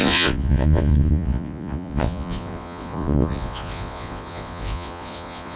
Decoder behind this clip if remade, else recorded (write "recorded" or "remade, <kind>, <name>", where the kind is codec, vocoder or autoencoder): remade, vocoder, Vocos